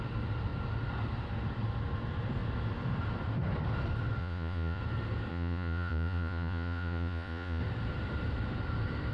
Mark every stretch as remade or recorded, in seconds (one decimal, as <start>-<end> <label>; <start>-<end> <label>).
0.0-4.2 recorded; 4.2-4.8 remade; 4.8-5.3 recorded; 5.3-7.6 remade; 7.6-9.1 recorded